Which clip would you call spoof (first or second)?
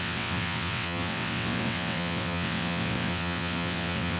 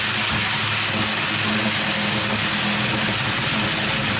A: first